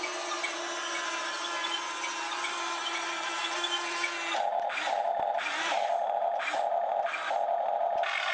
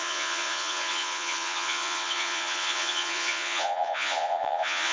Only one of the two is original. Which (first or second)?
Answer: first